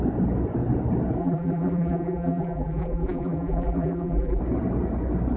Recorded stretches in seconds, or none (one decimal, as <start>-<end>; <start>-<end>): 0.0-1.2; 4.4-5.4